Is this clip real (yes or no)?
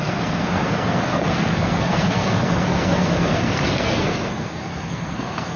no